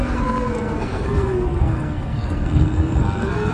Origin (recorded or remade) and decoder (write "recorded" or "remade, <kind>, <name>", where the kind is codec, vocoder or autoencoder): remade, codec, SNAC